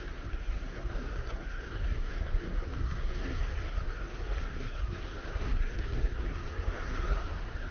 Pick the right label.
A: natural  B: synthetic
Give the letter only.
B